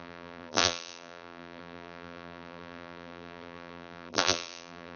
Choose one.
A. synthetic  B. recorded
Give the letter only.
A